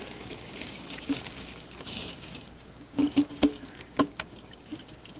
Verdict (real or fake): fake